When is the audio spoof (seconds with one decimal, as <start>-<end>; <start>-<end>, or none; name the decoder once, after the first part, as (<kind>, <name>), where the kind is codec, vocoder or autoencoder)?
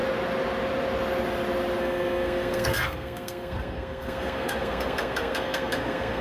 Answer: 1.8-6.2 (codec, SNAC)